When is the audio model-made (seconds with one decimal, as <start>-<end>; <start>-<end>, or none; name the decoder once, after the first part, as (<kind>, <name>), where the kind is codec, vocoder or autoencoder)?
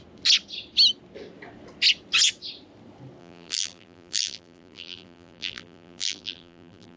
3.2-7.0 (vocoder, BigVGAN v2)